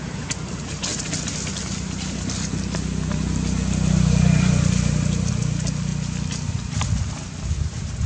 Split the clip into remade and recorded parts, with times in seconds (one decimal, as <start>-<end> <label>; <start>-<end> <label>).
0.0-8.1 recorded

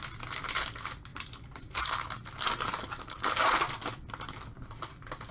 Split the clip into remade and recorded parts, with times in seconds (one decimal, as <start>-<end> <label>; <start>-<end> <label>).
0.0-1.1 recorded; 1.1-3.6 remade; 3.6-5.3 recorded

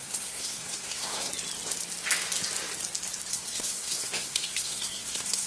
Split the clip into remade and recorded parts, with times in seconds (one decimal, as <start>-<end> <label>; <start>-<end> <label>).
0.0-1.3 remade; 1.3-3.3 recorded; 3.3-5.5 remade

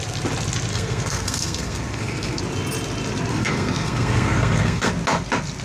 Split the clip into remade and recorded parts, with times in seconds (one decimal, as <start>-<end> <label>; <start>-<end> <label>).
0.0-0.7 recorded; 0.7-2.4 remade; 2.4-3.3 recorded; 3.3-4.9 remade; 4.9-5.6 recorded